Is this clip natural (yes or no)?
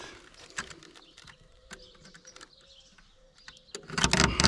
yes